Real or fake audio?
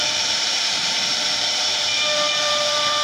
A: fake